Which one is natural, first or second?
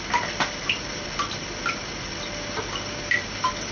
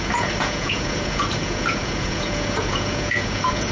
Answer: first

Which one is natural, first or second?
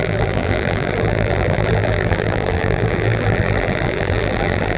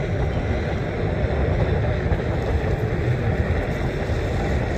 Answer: second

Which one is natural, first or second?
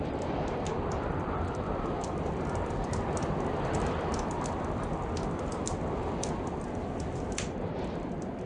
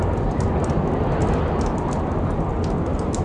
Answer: second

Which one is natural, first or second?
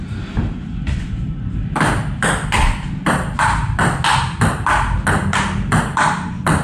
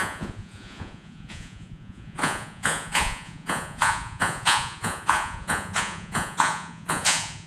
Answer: first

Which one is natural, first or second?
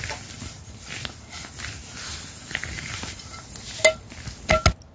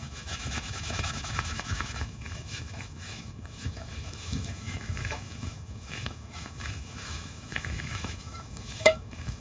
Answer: first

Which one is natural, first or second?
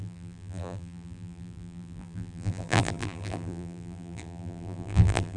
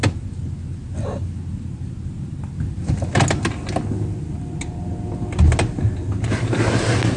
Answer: second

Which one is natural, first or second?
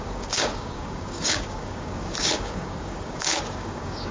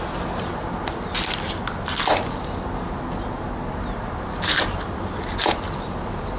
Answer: second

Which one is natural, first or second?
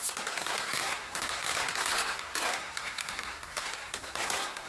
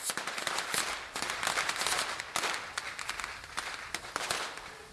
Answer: second